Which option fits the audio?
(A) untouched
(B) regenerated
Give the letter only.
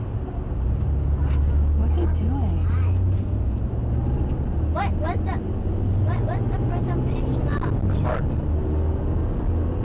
A